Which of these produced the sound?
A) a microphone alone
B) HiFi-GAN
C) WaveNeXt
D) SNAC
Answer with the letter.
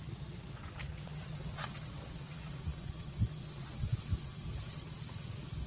C